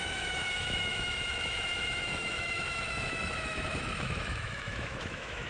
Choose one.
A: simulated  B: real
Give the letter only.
A